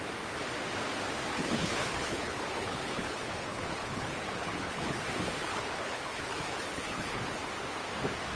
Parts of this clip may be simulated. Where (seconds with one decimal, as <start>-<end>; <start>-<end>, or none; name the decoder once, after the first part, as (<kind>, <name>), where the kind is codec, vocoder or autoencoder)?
1.3-5.0 (codec, HILCodec); 5.4-7.4